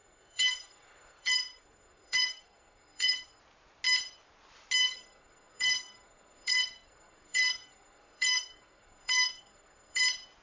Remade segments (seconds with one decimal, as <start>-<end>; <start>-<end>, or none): 0.0-3.4; 4.8-10.0